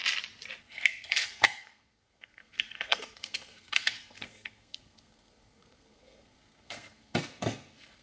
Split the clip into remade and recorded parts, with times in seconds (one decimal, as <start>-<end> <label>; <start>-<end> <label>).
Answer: 0.0-0.6 recorded; 0.6-8.0 remade